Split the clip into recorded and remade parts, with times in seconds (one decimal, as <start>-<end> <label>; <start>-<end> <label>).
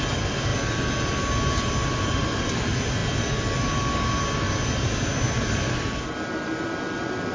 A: 0.0-7.3 recorded